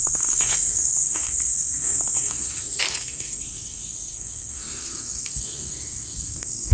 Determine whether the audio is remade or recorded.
remade